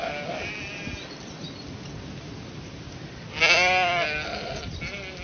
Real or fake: real